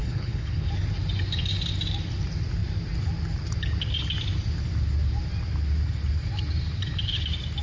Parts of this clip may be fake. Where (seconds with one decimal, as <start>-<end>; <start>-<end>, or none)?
0.0-0.7